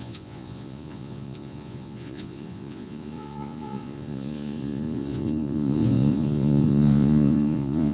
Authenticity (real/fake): fake